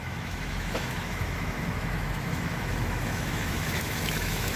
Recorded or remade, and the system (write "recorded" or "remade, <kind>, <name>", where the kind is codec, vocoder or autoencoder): remade, autoencoder, DAC-VAE